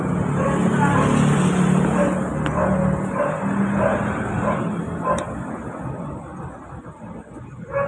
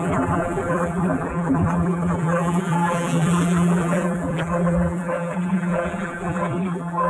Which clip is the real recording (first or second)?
first